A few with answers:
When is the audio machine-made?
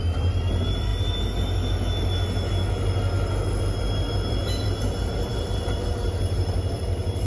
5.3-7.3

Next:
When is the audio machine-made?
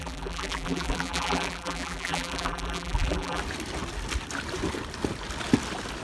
0.0-3.4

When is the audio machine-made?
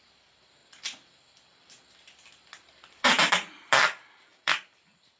0.0-5.2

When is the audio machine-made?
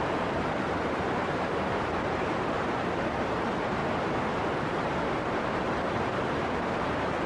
0.0-3.8; 5.5-7.3